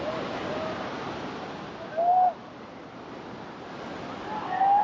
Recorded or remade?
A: recorded